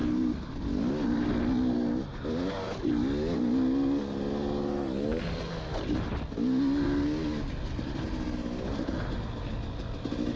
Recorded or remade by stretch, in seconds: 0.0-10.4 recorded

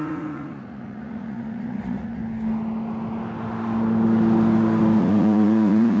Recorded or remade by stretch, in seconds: 0.0-2.2 remade; 2.2-5.0 recorded; 5.0-6.0 remade

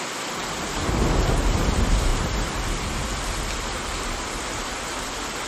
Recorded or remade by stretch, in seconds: 0.0-5.5 recorded